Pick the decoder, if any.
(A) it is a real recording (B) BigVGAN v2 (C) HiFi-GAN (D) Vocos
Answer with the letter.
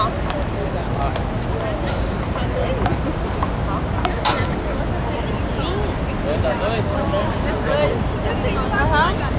A